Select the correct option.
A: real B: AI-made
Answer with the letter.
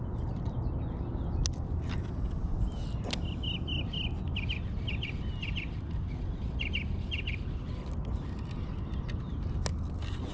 A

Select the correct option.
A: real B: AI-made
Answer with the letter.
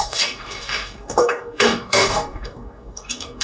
B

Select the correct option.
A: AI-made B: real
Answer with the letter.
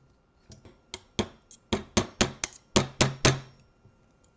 B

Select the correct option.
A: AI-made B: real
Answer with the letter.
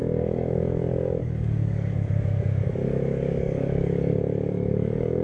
A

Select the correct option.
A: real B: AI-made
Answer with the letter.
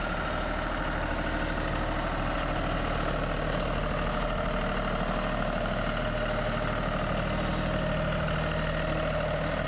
A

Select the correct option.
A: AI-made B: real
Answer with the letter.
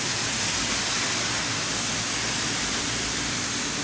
B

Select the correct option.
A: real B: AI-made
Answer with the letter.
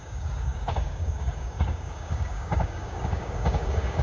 B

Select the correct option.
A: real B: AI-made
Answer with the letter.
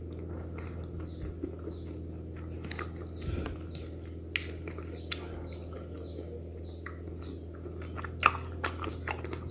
A